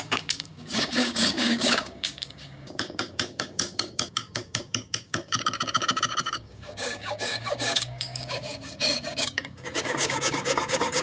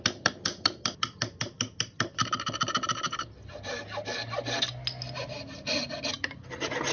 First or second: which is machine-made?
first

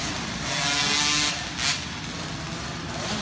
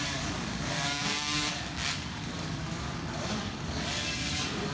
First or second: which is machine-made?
second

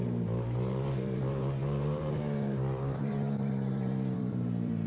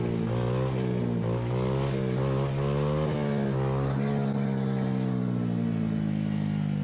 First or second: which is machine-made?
first